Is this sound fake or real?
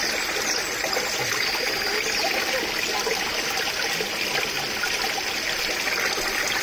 real